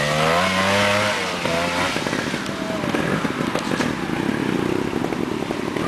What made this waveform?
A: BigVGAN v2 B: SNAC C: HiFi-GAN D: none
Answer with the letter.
D